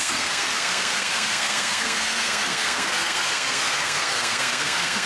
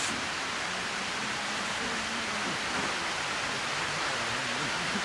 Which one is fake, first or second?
first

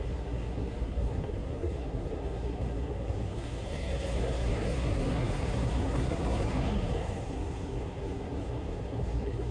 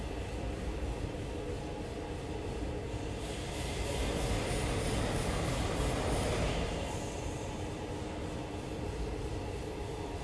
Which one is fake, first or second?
first